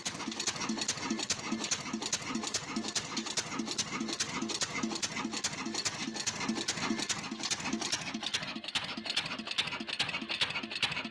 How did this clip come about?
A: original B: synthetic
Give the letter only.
A